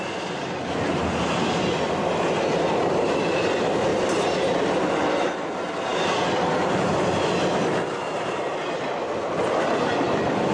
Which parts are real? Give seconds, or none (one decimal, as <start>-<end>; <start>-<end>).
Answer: 0.0-3.9; 4.9-10.5